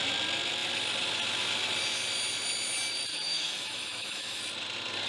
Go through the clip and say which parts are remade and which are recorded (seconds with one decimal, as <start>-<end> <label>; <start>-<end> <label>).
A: 0.0-3.1 recorded; 3.1-4.4 remade; 4.4-5.1 recorded